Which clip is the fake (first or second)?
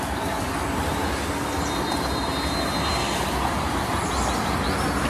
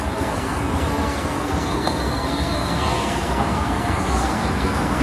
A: second